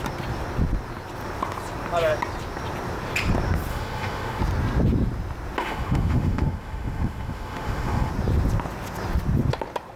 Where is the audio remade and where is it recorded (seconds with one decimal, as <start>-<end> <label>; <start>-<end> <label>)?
0.0-3.7 recorded; 3.7-4.4 remade; 4.4-5.6 recorded; 5.6-8.1 remade; 8.1-10.0 recorded